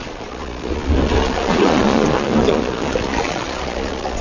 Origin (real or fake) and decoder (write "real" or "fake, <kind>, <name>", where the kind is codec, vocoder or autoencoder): fake, vocoder, Vocos